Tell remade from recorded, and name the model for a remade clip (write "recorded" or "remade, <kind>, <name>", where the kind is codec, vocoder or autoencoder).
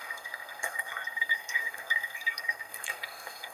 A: remade, codec, SNAC